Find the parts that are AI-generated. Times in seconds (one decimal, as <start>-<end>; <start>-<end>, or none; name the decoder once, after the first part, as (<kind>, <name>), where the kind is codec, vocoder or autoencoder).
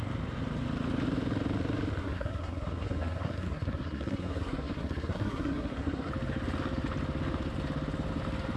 2.0-6.1 (codec, SNAC)